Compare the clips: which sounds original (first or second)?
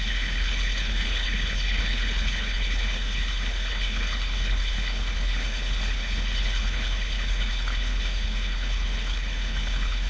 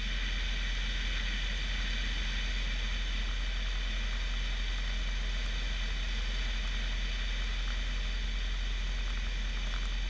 second